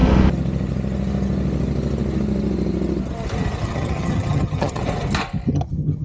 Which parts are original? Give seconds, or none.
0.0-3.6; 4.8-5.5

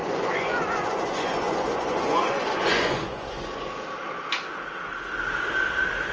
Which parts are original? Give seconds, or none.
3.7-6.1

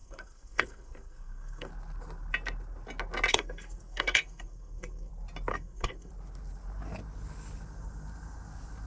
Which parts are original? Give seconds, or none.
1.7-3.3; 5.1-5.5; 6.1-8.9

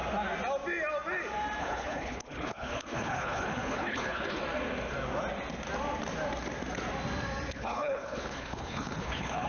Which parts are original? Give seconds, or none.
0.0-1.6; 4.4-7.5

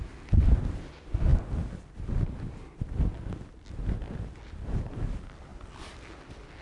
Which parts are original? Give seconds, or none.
0.0-6.6

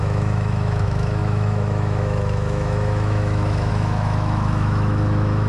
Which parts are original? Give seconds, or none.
none

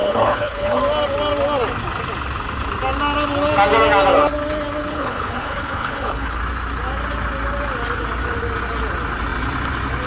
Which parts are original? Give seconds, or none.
0.8-4.9; 6.4-10.1

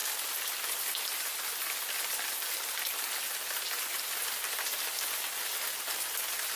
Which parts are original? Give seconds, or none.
0.0-6.6